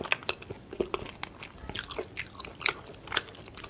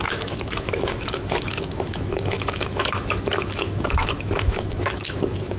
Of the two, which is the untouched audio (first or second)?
first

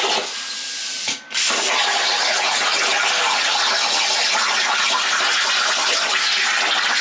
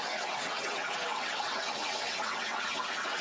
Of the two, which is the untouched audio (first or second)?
first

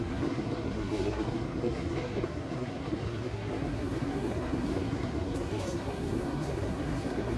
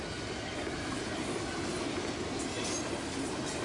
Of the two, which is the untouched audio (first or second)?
second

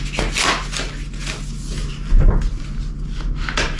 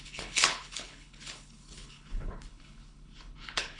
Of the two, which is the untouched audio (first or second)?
first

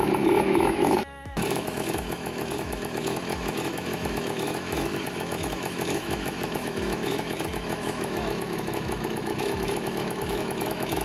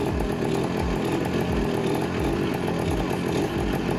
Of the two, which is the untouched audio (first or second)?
second